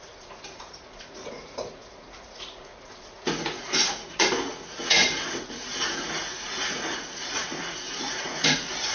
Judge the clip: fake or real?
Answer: fake